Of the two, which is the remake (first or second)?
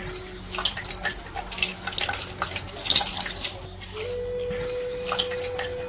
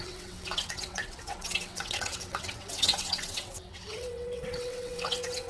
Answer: second